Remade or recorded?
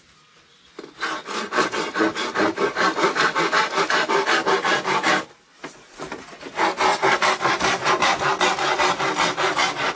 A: recorded